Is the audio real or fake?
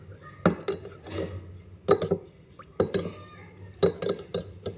real